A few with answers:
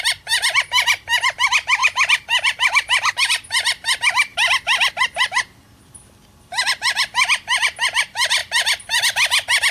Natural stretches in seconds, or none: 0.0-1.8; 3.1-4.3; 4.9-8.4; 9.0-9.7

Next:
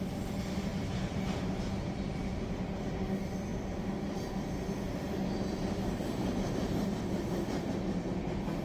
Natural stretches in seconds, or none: 0.0-6.2; 7.0-8.6

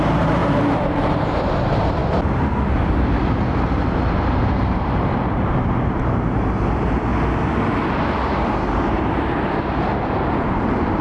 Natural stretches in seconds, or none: 2.0-3.6; 7.1-7.9

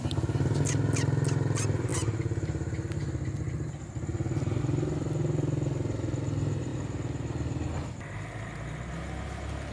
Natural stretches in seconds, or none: 0.0-9.7

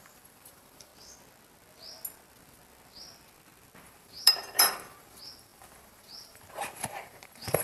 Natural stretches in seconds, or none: 0.9-3.8

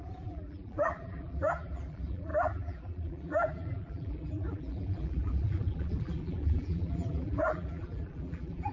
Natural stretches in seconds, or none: none

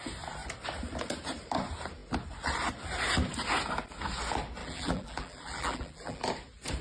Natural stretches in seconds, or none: 0.0-4.6; 6.2-6.8

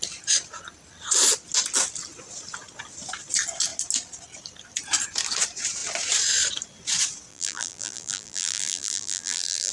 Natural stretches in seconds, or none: 0.0-7.3